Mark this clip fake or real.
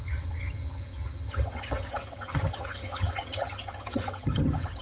fake